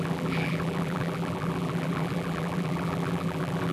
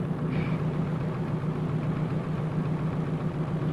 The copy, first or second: first